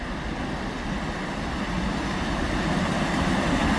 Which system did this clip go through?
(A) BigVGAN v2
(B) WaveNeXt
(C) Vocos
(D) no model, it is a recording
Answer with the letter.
D